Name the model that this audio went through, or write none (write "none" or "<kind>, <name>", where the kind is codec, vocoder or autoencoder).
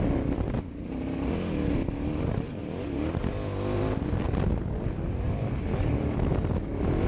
none